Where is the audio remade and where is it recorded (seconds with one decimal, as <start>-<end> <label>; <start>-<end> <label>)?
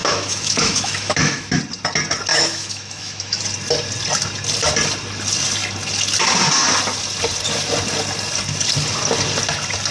0.0-1.6 remade; 1.6-2.3 recorded; 2.3-3.4 remade; 3.4-9.9 recorded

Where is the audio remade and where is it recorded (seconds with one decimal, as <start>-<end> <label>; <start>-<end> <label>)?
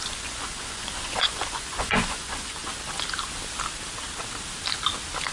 0.0-2.7 remade; 2.7-5.3 recorded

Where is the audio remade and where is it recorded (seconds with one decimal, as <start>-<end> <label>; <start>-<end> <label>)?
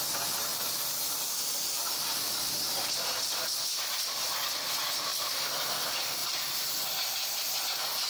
0.0-0.5 recorded; 0.5-2.9 remade; 2.9-5.1 recorded; 5.1-5.7 remade; 5.7-6.2 recorded; 6.2-6.7 remade; 6.7-8.1 recorded